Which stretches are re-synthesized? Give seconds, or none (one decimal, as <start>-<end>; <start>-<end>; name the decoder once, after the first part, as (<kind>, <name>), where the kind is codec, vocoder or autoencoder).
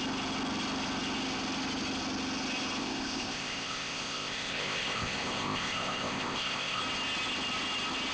2.8-6.8 (codec, ZipCodec)